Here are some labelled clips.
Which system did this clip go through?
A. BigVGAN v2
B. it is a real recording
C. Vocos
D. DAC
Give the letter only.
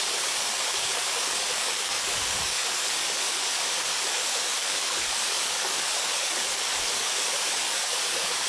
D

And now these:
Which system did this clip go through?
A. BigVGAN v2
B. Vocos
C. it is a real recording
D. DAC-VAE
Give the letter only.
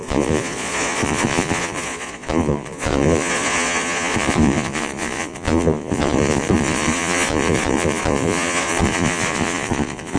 B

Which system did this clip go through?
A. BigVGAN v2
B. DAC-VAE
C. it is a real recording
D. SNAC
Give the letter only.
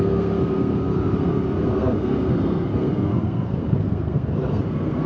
D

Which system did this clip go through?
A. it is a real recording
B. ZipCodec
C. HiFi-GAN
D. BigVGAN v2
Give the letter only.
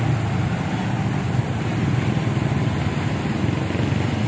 A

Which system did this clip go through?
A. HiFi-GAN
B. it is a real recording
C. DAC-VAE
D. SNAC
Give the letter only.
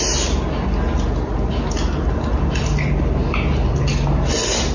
B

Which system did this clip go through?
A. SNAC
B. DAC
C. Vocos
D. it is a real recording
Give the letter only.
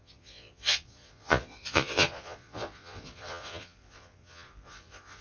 C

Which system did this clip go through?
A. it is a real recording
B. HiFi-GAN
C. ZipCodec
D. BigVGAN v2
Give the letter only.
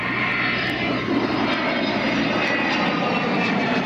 A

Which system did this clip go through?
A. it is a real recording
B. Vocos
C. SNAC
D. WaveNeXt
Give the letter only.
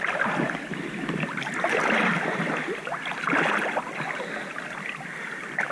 A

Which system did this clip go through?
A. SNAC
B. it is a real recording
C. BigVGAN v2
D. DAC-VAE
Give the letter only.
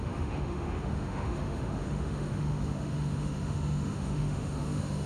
D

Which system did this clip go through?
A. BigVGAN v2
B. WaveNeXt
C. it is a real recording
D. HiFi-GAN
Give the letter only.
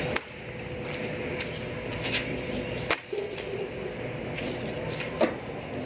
C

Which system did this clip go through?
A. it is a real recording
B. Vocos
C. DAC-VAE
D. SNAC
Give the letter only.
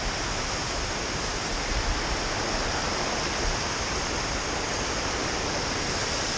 A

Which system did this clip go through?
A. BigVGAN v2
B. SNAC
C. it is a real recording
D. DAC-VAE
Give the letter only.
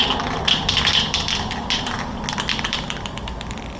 C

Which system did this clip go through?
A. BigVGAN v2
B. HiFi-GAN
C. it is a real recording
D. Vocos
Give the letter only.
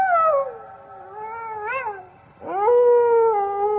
C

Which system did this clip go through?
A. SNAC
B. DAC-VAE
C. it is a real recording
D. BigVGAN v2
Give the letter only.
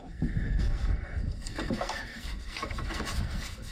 A